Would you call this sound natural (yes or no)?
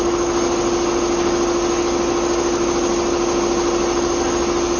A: yes